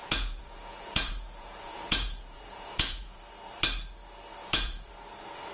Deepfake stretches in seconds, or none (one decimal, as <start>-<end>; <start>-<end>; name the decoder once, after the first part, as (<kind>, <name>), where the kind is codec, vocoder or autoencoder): 0.0-3.2 (vocoder, Vocos); 4.4-4.9

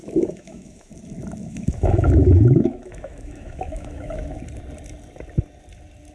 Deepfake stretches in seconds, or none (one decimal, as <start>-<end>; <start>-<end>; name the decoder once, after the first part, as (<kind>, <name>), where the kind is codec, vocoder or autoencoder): 0.0-0.9 (autoencoder, DAC-VAE); 1.4-4.4